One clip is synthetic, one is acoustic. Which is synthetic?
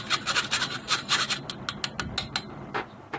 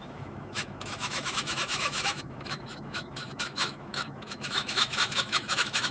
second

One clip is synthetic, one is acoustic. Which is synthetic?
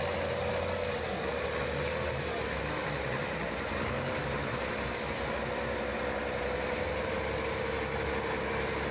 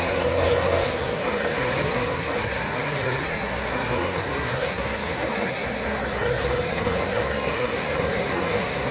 second